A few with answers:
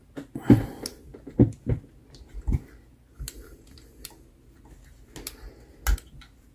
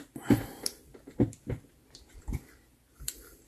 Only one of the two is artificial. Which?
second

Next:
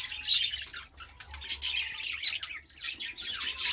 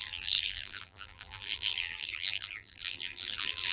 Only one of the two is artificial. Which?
second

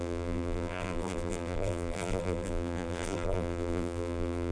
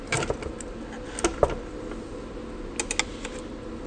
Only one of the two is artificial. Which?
first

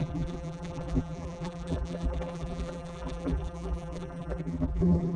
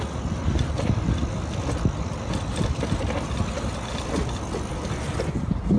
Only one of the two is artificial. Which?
first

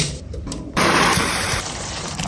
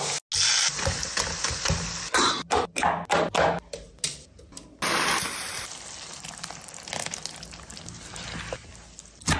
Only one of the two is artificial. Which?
first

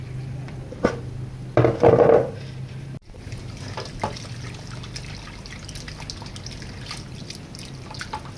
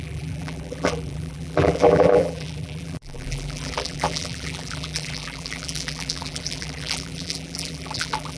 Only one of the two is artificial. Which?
second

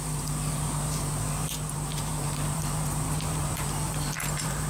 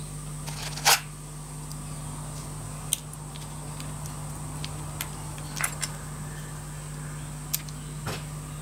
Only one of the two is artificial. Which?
first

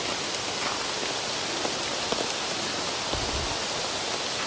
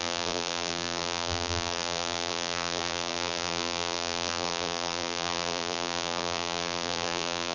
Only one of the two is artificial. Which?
second